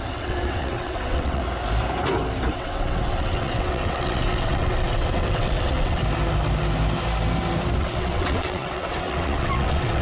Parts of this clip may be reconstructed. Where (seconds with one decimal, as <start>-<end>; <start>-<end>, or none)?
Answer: 0.0-1.4; 2.5-6.0; 7.8-10.0